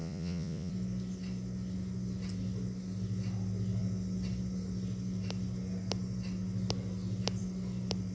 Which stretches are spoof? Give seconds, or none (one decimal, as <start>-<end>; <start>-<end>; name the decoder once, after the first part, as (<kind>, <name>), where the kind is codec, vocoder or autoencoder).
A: 0.0-0.7 (vocoder, Vocos)

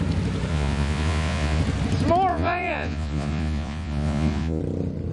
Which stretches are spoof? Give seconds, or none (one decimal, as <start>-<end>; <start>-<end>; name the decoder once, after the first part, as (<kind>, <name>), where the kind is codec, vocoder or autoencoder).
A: 0.5-1.6 (vocoder, Vocos); 2.3-4.6

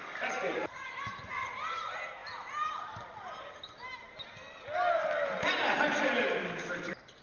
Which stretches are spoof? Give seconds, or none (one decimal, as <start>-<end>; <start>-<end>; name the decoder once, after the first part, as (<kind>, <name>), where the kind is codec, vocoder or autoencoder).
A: none

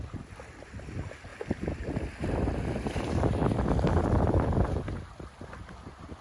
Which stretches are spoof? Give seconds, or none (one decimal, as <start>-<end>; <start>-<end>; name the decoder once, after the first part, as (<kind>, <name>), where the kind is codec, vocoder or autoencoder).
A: none

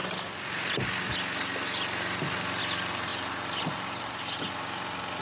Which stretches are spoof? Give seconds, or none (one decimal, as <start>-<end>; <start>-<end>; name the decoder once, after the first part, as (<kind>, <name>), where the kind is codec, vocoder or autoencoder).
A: none

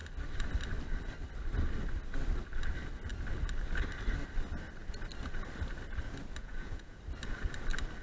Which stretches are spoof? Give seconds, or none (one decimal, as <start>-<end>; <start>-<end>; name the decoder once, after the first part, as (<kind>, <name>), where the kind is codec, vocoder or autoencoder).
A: 6.4-7.0 (vocoder, Vocos)

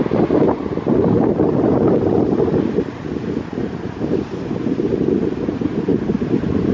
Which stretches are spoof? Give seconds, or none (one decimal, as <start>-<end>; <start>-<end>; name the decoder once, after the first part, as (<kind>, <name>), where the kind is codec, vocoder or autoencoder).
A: none